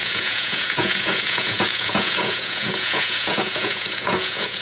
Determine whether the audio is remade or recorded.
remade